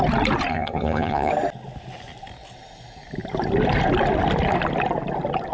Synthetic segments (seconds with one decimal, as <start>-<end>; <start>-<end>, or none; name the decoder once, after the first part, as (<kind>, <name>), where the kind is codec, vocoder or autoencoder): 0.5-1.3 (vocoder, HiFi-GAN)